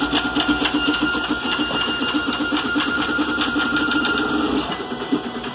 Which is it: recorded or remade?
recorded